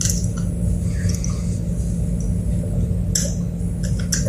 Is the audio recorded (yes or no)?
yes